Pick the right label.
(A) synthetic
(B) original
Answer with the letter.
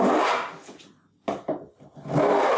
B